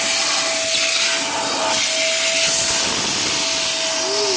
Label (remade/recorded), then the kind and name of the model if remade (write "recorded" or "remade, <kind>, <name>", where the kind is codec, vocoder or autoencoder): recorded